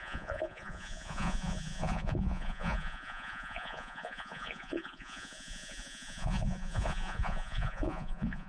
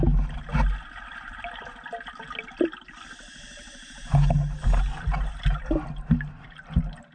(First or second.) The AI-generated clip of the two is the first